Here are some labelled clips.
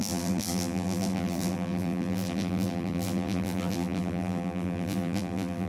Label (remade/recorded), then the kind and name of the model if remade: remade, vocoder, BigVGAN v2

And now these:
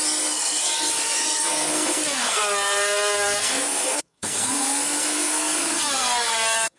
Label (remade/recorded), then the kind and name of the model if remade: remade, codec, SNAC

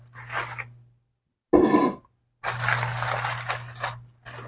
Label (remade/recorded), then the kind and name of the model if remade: recorded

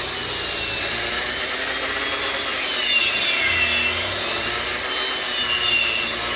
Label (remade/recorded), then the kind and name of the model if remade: recorded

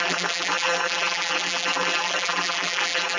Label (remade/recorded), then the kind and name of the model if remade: remade, vocoder, BigVGAN v2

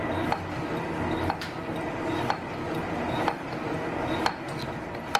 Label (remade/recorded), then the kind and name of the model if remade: recorded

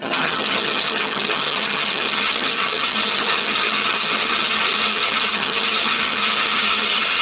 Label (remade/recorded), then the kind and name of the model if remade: remade, vocoder, HiFi-GAN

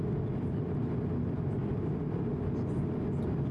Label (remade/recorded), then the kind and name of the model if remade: recorded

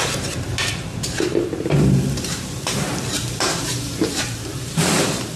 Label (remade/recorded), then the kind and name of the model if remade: remade, vocoder, BigVGAN v2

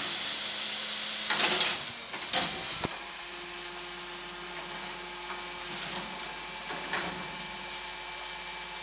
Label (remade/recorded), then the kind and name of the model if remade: recorded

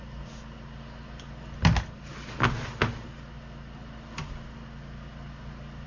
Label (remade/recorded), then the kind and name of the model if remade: recorded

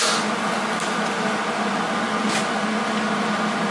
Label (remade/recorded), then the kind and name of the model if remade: recorded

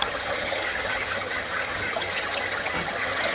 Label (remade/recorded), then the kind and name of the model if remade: remade, vocoder, HiFi-GAN